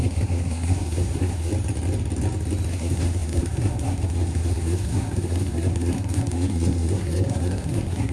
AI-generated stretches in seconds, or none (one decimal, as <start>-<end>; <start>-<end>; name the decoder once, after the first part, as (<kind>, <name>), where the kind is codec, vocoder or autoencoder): 0.0-1.5 (codec, SNAC); 2.7-8.1